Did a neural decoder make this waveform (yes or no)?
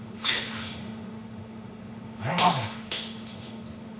yes